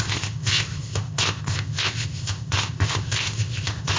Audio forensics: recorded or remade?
remade